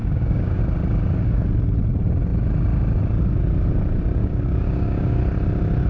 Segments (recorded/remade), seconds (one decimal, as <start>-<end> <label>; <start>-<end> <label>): 0.0-0.6 remade; 0.6-4.2 recorded; 4.2-5.2 remade; 5.2-5.9 recorded